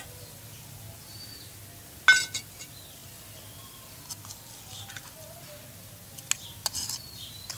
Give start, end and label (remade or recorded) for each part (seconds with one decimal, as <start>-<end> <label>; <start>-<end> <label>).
0.0-1.1 recorded; 1.1-1.6 remade; 1.6-7.6 recorded